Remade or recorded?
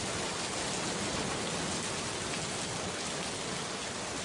recorded